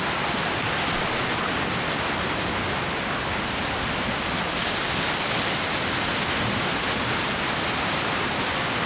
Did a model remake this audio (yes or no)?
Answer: no